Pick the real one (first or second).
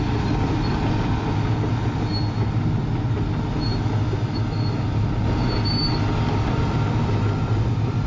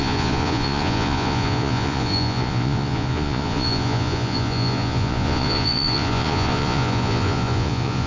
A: first